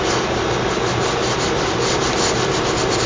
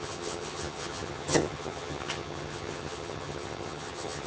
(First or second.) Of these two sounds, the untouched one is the first